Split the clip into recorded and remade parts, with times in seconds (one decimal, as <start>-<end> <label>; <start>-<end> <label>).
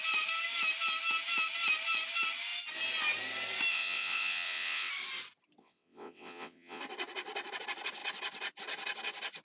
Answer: 0.0-3.7 recorded; 3.7-4.9 remade; 4.9-5.6 recorded; 5.6-6.8 remade; 6.8-9.4 recorded